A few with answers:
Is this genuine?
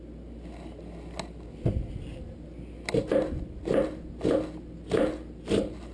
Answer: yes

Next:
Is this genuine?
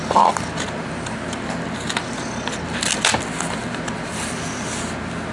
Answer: yes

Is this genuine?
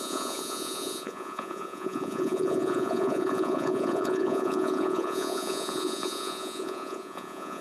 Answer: no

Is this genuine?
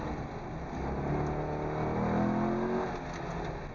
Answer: yes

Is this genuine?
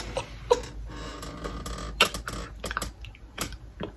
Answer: yes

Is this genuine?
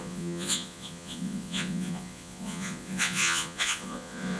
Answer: no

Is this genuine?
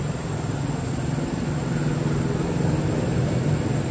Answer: yes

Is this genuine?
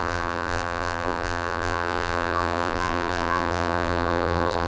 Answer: no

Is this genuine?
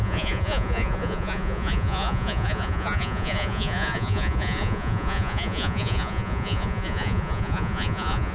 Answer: no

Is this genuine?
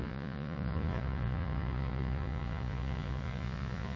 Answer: no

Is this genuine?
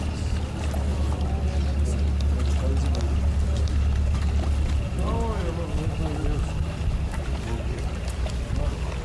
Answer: yes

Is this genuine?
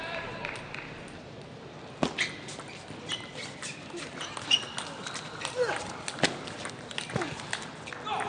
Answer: yes